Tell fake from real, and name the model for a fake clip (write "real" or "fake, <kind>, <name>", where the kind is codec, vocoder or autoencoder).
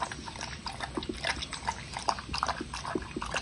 real